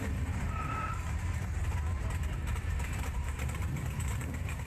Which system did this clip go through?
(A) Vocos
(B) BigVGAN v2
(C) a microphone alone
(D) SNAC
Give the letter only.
B